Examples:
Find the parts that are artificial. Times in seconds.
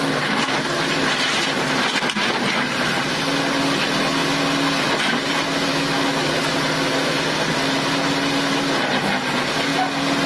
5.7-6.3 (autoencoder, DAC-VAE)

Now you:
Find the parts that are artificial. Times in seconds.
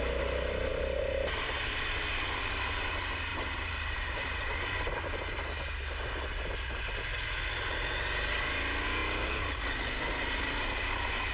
0.7-1.9 (vocoder, BigVGAN v2); 3.3-4.9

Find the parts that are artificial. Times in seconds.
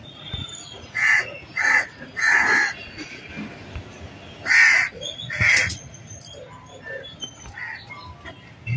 0.0-3.3 (vocoder, Vocos); 4.5-6.0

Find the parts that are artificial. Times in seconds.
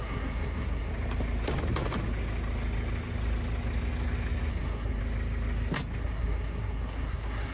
0.0-0.9 (codec, SNAC); 4.5-5.0; 6.0-7.5